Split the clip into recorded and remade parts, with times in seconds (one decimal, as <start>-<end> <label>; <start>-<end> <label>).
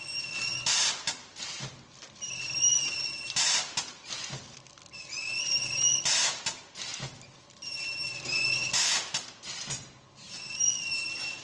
0.0-11.4 recorded